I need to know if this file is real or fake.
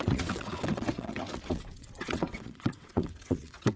fake